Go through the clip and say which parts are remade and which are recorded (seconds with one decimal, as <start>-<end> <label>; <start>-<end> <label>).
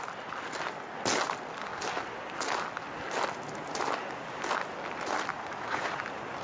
0.0-5.3 recorded; 5.3-6.0 remade; 6.0-6.4 recorded